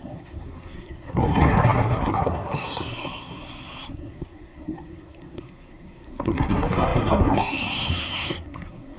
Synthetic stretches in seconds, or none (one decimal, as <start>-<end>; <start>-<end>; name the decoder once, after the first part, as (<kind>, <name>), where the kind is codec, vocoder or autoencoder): 0.0-9.0 (codec, SNAC)